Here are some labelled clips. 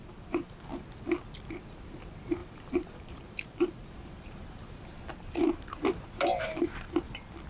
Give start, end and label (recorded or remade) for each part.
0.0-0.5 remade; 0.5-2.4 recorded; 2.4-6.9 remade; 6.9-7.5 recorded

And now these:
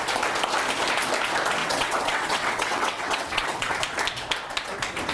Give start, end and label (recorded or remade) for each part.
0.0-1.6 recorded; 1.6-3.7 remade; 3.7-5.1 recorded